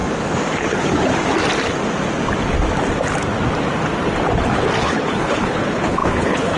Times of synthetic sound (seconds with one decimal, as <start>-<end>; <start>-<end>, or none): 0.6-1.0; 4.8-6.6